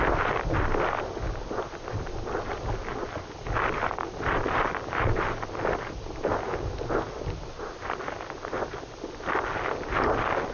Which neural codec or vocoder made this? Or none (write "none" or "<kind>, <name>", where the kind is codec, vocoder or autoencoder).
none